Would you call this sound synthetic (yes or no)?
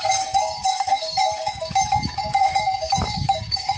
yes